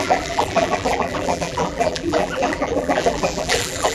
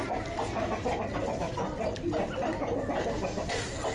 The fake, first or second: first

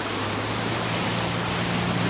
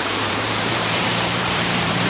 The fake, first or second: second